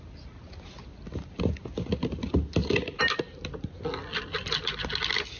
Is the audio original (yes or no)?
yes